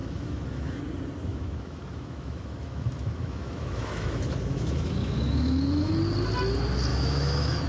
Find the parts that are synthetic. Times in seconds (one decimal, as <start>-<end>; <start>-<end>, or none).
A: 0.0-0.8; 1.3-5.9; 6.9-7.7